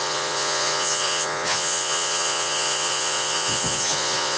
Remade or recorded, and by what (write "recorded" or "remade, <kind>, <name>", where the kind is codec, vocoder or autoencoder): remade, vocoder, Vocos